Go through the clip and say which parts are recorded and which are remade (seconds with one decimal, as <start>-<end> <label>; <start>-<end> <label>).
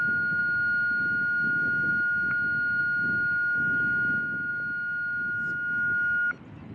0.0-6.7 recorded